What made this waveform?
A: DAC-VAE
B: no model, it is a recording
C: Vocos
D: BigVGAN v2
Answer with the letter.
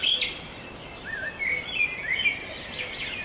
D